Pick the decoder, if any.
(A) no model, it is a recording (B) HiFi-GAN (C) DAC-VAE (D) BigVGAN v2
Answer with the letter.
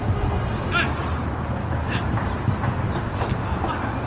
A